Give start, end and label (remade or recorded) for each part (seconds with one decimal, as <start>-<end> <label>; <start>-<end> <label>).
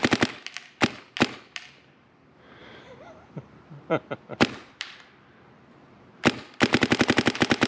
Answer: 0.0-2.6 recorded; 2.6-5.1 remade; 5.1-7.7 recorded